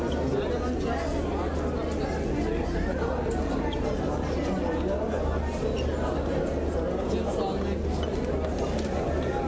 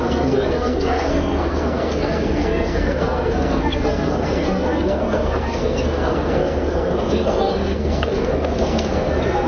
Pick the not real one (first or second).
second